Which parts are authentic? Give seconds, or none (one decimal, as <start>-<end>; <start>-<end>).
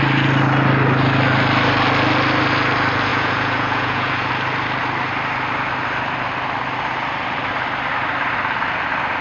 0.0-3.1; 4.3-9.2